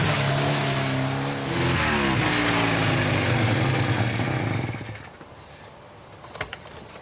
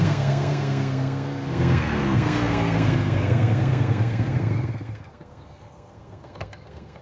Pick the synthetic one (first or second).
second